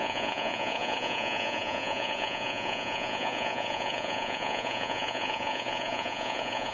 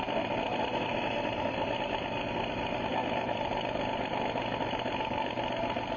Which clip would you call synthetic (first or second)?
first